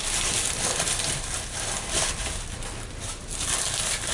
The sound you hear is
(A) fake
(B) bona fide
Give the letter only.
B